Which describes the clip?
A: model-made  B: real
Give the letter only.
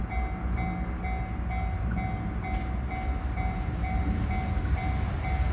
B